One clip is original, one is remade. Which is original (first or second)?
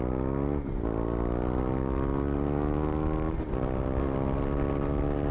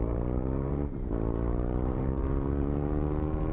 first